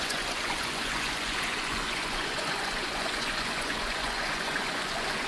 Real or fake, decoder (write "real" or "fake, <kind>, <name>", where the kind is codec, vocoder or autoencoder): fake, vocoder, Vocos